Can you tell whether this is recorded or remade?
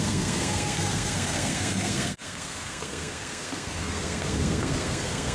remade